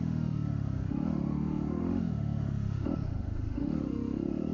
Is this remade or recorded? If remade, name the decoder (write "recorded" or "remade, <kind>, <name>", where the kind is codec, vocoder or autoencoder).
remade, autoencoder, DAC-VAE